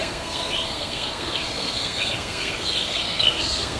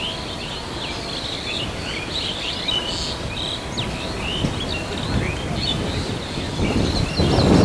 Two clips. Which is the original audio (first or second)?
second